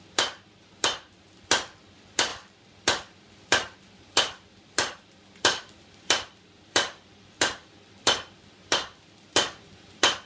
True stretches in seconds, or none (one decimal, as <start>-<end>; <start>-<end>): none